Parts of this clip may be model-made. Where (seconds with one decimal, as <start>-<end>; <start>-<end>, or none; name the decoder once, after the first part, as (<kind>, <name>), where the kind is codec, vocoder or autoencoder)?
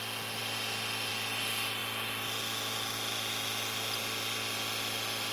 none